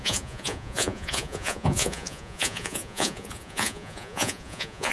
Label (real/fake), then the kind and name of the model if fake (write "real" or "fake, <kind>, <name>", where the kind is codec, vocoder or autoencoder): fake, vocoder, Vocos